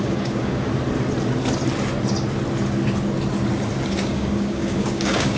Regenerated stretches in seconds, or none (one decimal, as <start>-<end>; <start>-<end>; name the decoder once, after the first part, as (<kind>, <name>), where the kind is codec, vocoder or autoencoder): 0.0-0.7 (codec, DAC); 3.9-5.4